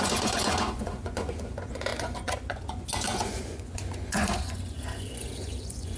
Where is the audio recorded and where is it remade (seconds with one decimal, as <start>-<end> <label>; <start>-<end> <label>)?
0.0-6.0 remade